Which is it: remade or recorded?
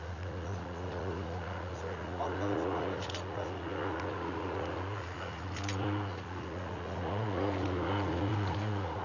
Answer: remade